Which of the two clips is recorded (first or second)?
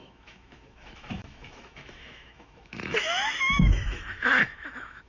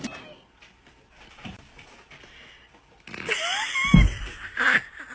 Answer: second